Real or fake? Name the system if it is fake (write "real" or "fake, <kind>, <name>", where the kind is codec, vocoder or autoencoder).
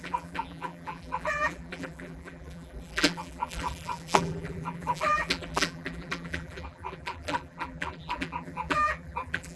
fake, vocoder, BigVGAN v2